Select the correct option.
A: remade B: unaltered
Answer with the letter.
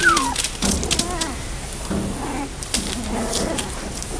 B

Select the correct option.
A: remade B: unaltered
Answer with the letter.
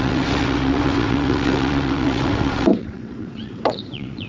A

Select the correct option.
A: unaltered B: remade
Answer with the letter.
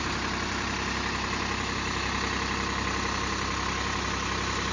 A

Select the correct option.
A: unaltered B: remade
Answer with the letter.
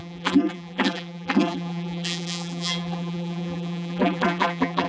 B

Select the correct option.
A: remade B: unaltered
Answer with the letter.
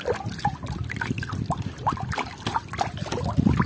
B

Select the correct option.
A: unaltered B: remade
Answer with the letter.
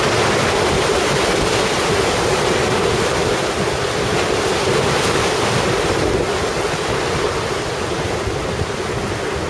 A